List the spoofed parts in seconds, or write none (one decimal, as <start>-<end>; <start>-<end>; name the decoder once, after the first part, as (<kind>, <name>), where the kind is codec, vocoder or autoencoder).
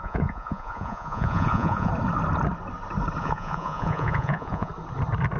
0.0-1.9 (vocoder, Vocos); 3.2-4.7